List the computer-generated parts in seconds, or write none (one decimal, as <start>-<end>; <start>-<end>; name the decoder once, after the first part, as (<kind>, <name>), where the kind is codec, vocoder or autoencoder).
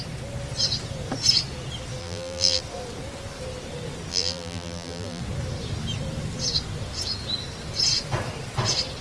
2.0-2.6 (vocoder, BigVGAN v2); 4.1-5.2